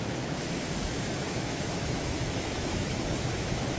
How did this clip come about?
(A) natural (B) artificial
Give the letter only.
B